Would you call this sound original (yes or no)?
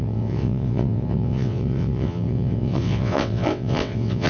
no